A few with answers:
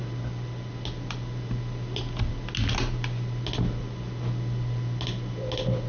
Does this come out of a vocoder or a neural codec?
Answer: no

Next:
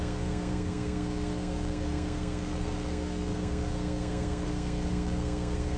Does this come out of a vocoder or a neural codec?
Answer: yes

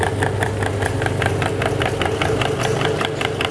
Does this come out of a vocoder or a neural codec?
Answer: no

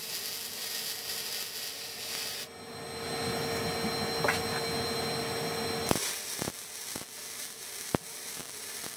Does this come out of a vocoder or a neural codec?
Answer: no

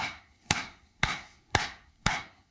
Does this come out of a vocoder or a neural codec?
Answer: yes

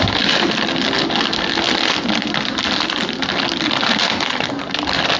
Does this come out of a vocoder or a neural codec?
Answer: no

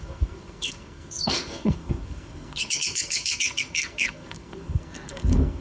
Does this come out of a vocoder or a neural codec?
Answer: yes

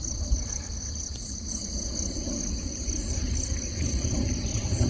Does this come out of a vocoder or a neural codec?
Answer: no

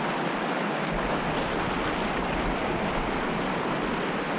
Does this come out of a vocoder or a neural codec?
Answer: no